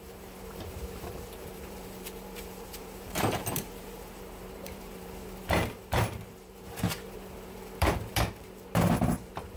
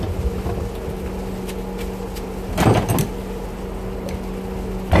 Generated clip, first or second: first